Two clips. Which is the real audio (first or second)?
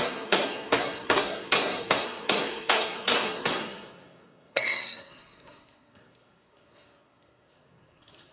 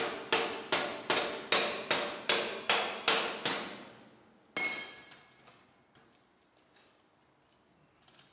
second